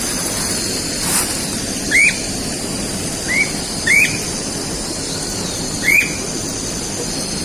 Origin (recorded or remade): recorded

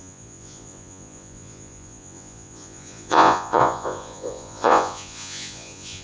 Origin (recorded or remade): remade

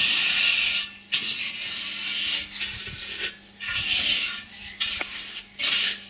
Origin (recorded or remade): recorded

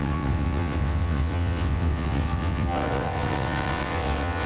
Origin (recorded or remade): remade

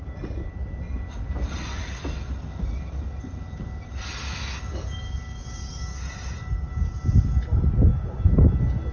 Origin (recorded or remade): recorded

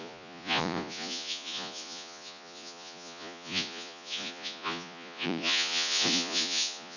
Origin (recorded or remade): remade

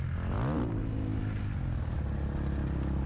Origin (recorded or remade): recorded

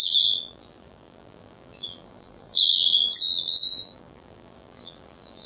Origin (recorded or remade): remade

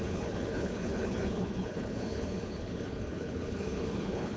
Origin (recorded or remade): remade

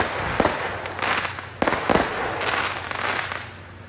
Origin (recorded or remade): recorded